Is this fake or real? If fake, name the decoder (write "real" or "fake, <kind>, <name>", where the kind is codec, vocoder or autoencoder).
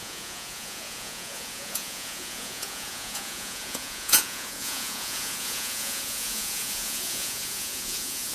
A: fake, vocoder, Vocos